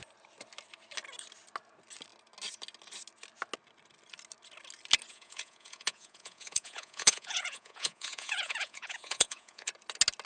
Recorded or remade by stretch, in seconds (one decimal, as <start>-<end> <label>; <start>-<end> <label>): 0.0-5.1 recorded; 5.1-9.7 remade; 9.7-10.3 recorded